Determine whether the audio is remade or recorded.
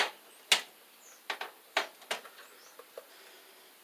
recorded